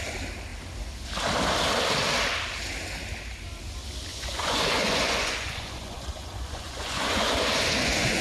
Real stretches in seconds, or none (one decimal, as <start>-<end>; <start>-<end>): 0.0-4.1